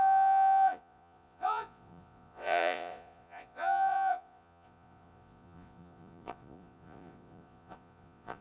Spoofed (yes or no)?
yes